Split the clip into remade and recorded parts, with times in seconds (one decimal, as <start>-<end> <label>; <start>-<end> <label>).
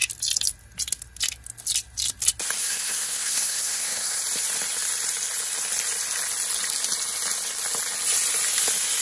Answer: 0.0-2.6 recorded; 2.6-4.2 remade; 4.2-9.0 recorded